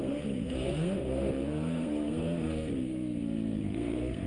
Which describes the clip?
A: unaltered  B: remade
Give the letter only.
B